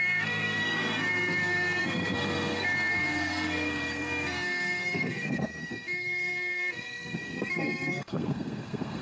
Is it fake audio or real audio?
fake